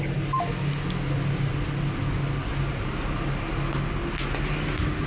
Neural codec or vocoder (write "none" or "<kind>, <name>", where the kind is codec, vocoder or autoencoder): none